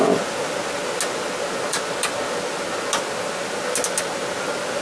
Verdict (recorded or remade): recorded